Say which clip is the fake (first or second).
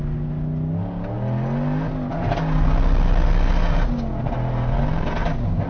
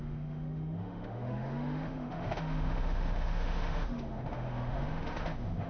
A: second